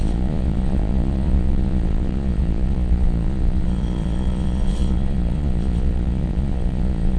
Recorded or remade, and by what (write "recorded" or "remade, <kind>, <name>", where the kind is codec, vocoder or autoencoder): remade, vocoder, Vocos